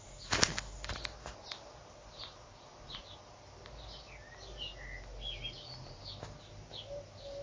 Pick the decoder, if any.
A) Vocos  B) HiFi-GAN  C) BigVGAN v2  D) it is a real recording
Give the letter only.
D